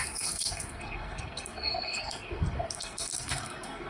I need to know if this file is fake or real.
fake